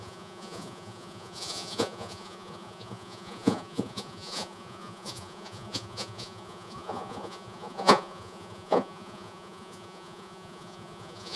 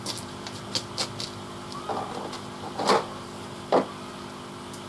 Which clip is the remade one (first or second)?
first